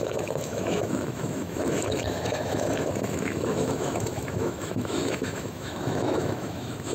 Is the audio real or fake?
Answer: fake